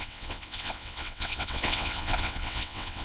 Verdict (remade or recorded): remade